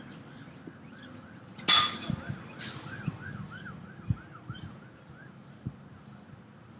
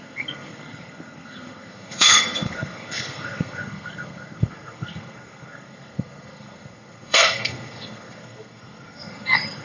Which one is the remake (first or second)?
second